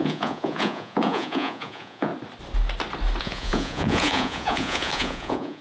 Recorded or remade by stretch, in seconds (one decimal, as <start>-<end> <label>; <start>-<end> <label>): 0.0-2.1 remade; 2.1-3.2 recorded; 3.2-5.6 remade